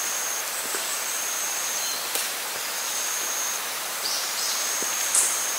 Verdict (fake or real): fake